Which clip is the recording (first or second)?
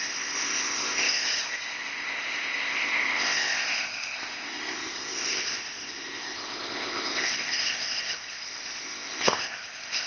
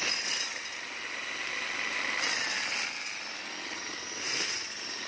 second